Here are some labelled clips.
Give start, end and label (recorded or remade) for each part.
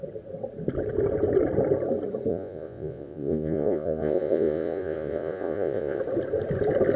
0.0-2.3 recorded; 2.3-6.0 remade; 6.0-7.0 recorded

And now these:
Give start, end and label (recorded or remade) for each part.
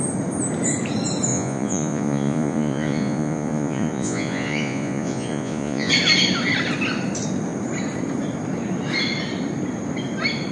0.0-1.3 recorded; 1.3-5.9 remade; 5.9-10.5 recorded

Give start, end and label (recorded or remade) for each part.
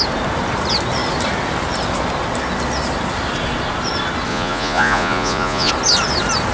0.0-4.3 recorded; 4.3-5.7 remade; 5.7-6.5 recorded